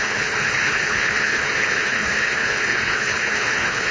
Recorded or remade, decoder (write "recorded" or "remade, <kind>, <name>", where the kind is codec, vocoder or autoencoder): remade, codec, HILCodec